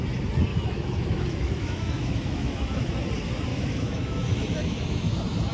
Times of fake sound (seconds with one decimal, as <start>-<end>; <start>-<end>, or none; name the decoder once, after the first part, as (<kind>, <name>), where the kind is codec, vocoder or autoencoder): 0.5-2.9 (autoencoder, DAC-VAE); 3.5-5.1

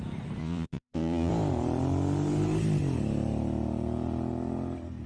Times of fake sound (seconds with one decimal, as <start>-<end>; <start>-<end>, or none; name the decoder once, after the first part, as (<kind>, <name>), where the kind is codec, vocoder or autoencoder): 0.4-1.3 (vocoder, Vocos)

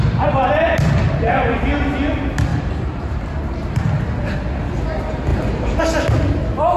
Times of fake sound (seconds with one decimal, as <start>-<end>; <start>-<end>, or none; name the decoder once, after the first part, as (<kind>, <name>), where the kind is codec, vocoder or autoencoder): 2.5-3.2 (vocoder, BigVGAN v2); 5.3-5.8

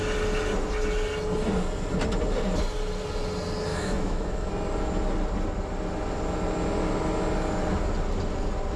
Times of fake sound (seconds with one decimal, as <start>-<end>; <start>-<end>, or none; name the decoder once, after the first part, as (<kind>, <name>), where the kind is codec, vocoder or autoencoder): 3.7-4.5 (autoencoder, DAC-VAE)

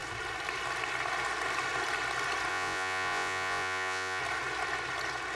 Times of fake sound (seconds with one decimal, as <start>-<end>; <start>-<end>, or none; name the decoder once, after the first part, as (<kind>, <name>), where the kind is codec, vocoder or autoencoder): 2.5-4.2 (vocoder, Vocos)

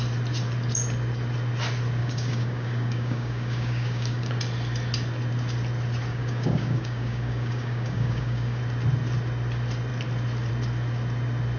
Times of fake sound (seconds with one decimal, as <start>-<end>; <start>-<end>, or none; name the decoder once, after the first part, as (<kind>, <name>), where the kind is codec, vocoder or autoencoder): 2.0-4.3 (codec, DAC); 6.1-8.6

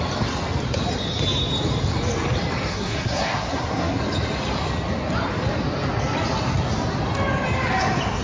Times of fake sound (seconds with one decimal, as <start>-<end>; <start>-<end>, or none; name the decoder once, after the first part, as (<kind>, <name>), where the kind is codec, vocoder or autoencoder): 2.7-4.0 (codec, SNAC)

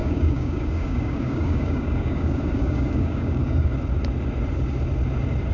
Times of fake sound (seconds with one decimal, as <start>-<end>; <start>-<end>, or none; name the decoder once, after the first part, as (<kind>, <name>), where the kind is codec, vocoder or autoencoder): 0.0-3.7 (codec, DAC)